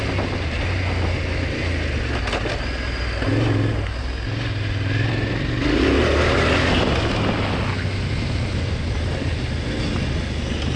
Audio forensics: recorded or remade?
recorded